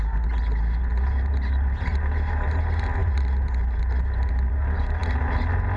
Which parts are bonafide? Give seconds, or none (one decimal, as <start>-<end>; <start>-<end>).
0.0-0.9; 2.3-3.0; 4.5-5.8